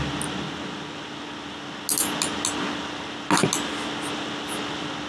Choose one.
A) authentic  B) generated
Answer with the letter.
A